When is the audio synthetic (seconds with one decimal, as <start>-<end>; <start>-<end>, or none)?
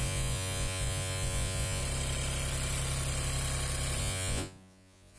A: 0.0-1.8; 4.0-5.2